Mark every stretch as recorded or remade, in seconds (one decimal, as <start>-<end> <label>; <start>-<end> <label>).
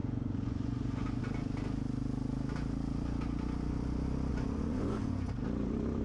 0.0-1.2 remade; 1.2-4.3 recorded; 4.3-5.3 remade; 5.3-6.0 recorded